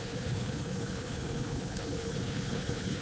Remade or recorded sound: remade